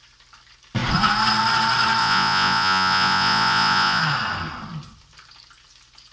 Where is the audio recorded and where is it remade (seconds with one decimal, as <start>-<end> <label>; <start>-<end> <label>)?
0.0-2.0 recorded; 2.0-4.0 remade; 4.0-6.1 recorded